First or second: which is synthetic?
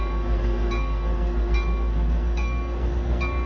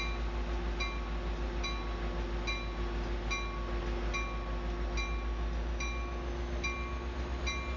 first